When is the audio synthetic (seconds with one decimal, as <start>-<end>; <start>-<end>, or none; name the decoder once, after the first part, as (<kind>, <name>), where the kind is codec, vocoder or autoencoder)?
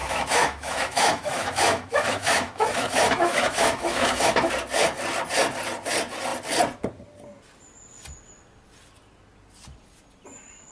0.0-4.5 (autoencoder, DAC-VAE)